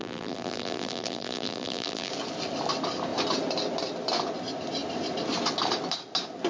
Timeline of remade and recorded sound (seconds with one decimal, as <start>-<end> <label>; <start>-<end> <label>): 0.0-2.1 remade; 2.1-6.5 recorded